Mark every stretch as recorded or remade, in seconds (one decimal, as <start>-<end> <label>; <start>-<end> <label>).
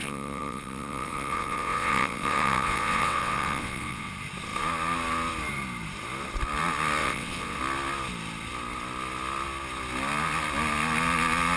0.0-4.1 remade; 4.1-7.0 recorded; 7.0-7.6 remade; 7.6-11.6 recorded